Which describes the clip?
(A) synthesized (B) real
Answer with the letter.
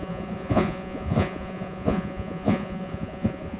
A